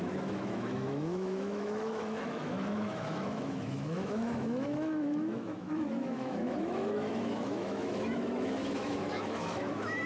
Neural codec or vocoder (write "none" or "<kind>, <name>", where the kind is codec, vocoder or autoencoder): autoencoder, DAC-VAE